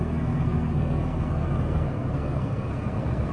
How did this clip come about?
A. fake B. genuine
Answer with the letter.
A